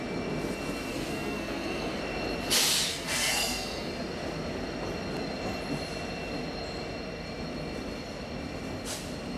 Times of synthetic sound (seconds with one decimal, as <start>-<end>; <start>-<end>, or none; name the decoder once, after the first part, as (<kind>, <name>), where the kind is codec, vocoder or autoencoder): 0.9-2.0 (codec, SNAC); 2.9-3.9